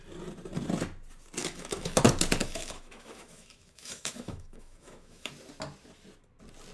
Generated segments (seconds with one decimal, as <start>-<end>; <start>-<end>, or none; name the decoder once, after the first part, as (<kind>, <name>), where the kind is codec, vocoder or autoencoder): 1.4-2.0 (autoencoder, DAC-VAE); 2.4-5.3